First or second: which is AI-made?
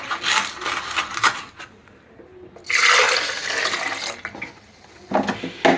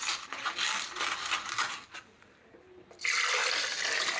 second